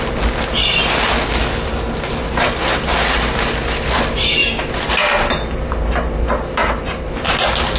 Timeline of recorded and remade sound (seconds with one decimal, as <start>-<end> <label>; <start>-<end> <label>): 0.0-4.4 recorded; 4.4-4.9 remade; 4.9-6.6 recorded; 6.6-7.1 remade; 7.1-7.8 recorded